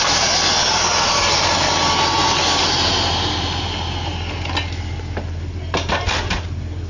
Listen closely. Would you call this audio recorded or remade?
recorded